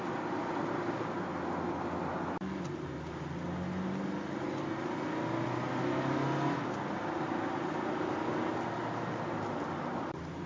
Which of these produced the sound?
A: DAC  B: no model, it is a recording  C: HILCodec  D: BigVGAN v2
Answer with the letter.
B